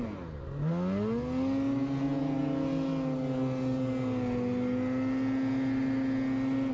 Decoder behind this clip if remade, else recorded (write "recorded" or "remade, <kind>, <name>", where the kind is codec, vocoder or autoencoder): recorded